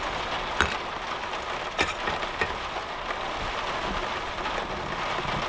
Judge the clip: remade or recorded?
recorded